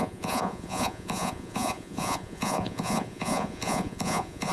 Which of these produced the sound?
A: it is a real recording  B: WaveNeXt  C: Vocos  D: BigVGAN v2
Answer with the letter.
C